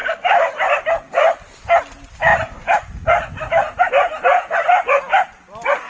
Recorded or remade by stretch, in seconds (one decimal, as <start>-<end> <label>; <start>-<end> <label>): 0.0-5.9 recorded

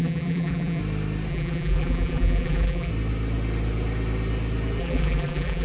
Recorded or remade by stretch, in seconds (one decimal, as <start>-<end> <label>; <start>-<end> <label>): 0.0-0.8 remade; 0.8-1.3 recorded; 1.3-2.9 remade; 2.9-4.8 recorded; 4.8-5.6 remade

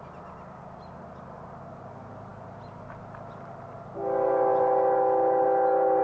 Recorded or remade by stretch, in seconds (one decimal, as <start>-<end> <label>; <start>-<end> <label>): 0.0-6.0 recorded

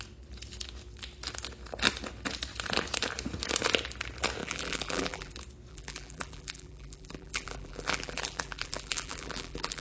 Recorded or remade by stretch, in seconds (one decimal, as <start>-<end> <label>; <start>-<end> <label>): 0.0-4.4 recorded; 4.4-5.3 remade; 5.3-5.7 recorded; 5.7-9.8 remade

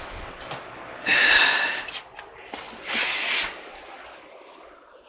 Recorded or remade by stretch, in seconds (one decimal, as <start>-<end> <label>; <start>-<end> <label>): 0.0-5.1 recorded

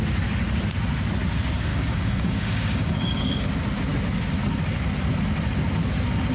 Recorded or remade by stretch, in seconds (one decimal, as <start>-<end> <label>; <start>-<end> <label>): 0.0-1.7 recorded; 1.7-3.5 remade; 3.5-6.3 recorded